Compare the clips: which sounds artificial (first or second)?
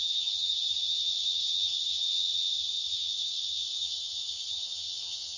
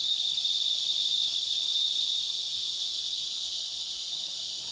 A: first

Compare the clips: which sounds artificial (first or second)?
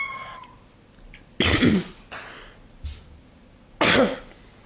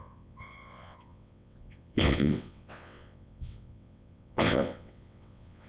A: second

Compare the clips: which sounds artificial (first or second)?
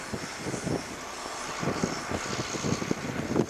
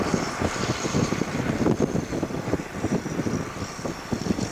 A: second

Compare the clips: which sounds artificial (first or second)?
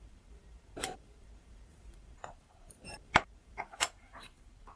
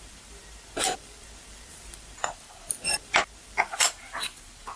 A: first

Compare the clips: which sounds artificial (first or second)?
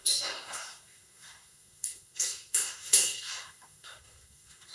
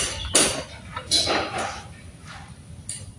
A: first